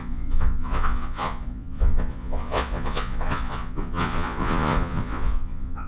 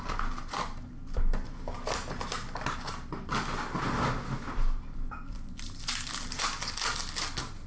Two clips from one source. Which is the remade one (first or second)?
first